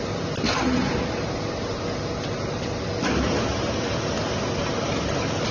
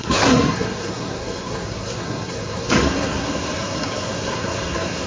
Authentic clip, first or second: first